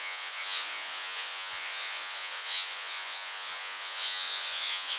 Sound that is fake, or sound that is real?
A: fake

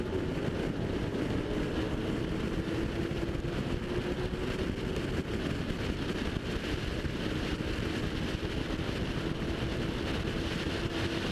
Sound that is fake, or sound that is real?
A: real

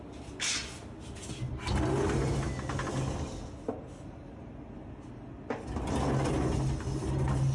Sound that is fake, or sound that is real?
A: real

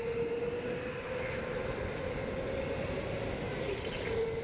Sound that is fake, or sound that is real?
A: real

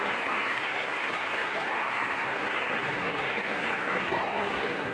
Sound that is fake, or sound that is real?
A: fake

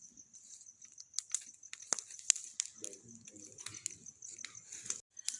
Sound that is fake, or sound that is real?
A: real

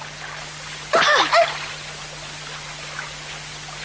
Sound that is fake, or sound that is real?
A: real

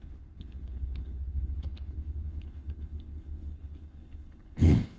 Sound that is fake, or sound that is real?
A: fake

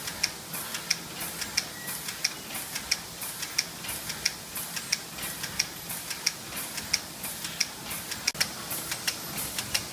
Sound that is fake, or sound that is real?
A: real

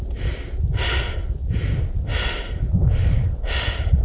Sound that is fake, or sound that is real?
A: real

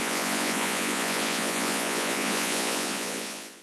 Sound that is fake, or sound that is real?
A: fake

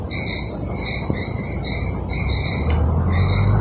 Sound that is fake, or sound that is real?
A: real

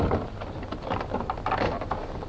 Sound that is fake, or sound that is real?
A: real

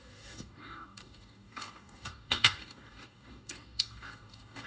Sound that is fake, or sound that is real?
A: fake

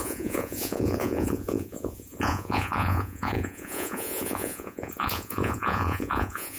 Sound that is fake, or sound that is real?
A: fake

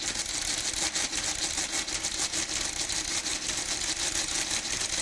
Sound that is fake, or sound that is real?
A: real